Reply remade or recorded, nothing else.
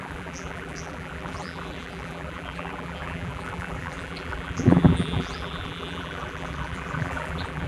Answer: remade